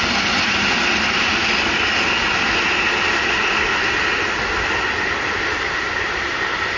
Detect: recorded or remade recorded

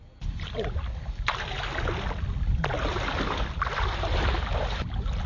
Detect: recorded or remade recorded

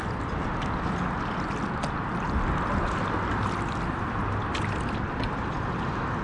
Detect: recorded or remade recorded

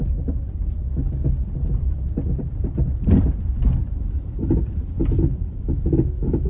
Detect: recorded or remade recorded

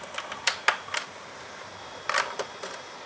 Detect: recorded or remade recorded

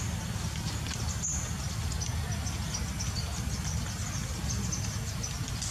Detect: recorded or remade recorded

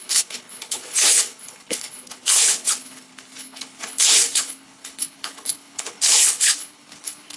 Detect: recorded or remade remade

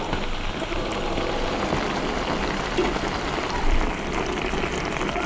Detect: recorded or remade recorded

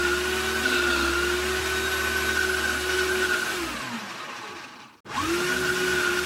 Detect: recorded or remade recorded